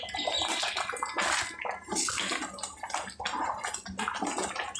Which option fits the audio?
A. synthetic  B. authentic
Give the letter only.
B